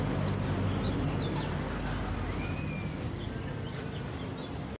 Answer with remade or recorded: recorded